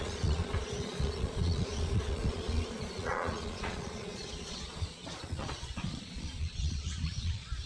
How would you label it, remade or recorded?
remade